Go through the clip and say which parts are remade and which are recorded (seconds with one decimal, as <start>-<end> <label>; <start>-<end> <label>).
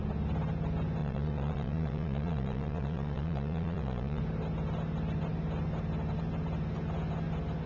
0.0-1.0 recorded; 1.0-4.2 remade; 4.2-7.7 recorded